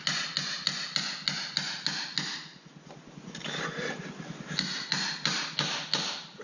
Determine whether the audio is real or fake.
real